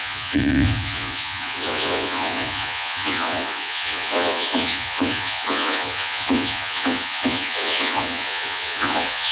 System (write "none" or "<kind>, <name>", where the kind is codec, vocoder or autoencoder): vocoder, Vocos